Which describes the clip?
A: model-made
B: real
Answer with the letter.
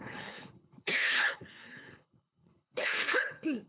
A